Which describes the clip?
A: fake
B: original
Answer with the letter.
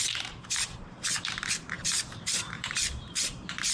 A